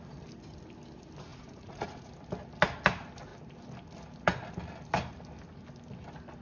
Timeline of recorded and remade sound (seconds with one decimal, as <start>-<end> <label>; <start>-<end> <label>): 0.0-1.3 recorded; 1.3-2.1 remade; 2.1-6.4 recorded